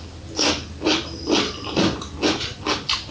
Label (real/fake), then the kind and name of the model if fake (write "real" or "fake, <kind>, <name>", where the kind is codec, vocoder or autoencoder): real